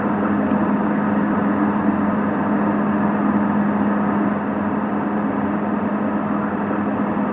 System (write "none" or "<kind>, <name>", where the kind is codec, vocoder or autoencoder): none